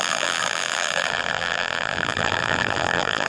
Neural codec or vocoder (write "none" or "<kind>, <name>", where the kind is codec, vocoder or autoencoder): vocoder, BigVGAN v2